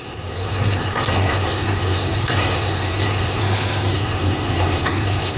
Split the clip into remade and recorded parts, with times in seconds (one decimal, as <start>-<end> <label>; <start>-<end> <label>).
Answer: 0.0-3.4 remade; 3.4-3.9 recorded; 3.9-5.4 remade